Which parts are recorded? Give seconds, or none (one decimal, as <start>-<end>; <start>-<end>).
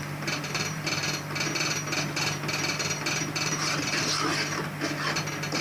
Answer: 1.0-3.2; 4.3-5.6